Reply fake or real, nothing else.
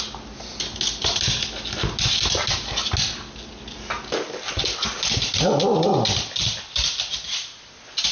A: real